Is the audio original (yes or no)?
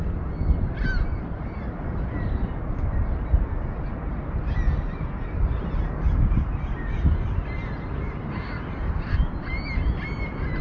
yes